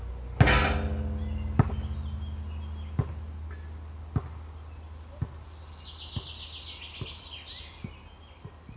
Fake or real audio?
real